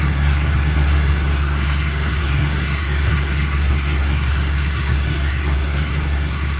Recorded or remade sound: remade